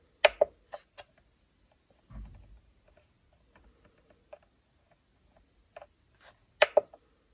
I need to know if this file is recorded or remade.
recorded